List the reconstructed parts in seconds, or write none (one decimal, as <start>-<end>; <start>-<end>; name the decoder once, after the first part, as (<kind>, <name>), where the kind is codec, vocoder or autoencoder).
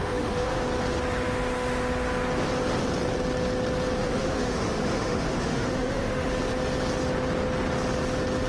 0.0-0.6 (autoencoder, DAC-VAE); 4.0-6.3